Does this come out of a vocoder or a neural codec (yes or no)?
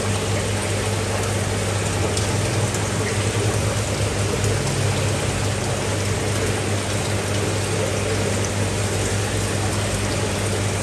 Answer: no